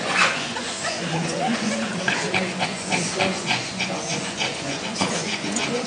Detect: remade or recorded remade